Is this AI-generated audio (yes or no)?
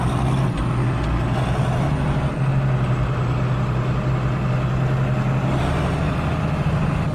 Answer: no